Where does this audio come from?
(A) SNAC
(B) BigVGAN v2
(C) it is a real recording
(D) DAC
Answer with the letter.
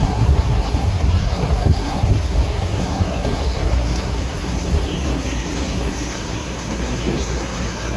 A